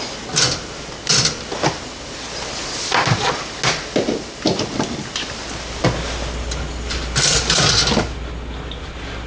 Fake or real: real